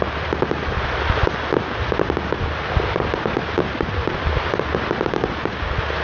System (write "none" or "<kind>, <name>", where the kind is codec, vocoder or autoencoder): none